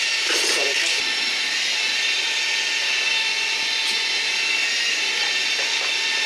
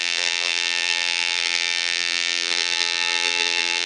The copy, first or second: second